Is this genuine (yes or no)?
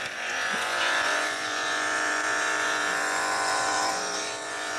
no